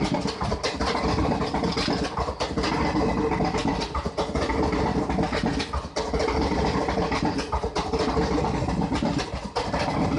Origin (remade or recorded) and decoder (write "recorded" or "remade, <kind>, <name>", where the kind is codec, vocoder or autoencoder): recorded